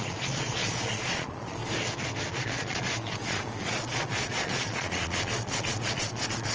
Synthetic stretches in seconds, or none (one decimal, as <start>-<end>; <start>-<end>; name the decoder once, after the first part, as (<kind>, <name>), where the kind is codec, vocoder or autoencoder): 0.0-1.6 (vocoder, Vocos); 2.3-6.5